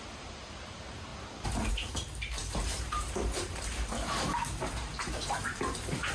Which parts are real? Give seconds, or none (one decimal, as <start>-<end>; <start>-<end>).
1.1-1.7